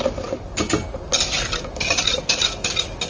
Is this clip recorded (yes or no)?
yes